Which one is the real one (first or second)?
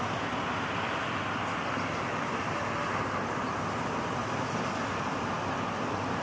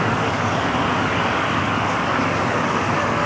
first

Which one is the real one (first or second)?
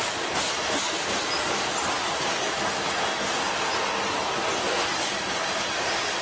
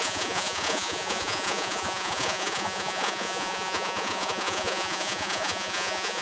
first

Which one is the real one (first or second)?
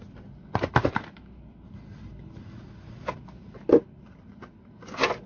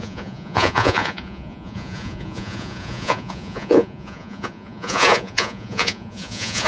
first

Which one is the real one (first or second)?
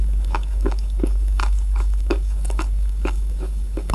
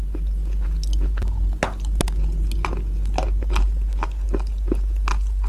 second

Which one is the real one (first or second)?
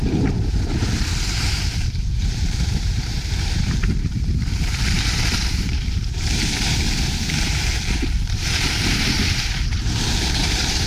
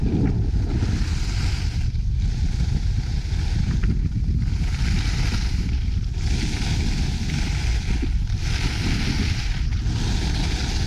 second